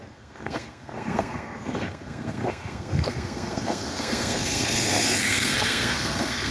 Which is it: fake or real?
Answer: fake